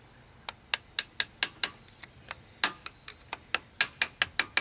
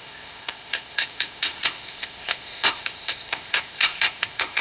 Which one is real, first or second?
first